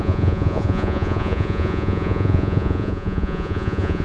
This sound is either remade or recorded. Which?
remade